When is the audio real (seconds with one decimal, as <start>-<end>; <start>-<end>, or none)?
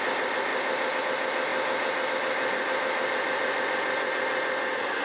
0.0-5.0